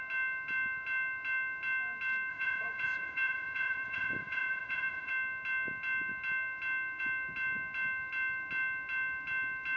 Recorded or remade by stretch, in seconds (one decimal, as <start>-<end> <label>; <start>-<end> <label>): 0.0-2.3 recorded; 2.3-5.1 remade; 5.1-9.8 recorded